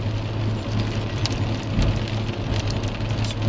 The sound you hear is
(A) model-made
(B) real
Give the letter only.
B